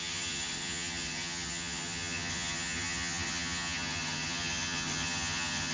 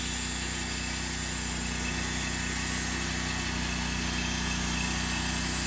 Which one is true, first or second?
second